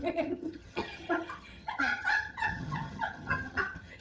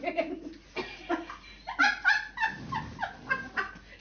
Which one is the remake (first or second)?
first